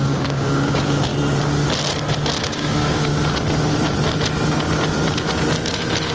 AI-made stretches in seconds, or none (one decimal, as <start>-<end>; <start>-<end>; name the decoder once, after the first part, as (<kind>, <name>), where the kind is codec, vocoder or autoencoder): 0.0-1.1 (codec, DAC); 2.4-3.1